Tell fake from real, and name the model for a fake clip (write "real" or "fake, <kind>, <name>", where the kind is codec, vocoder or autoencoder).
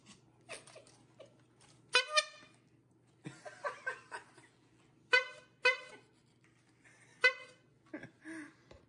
real